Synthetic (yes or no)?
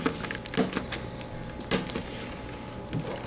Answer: no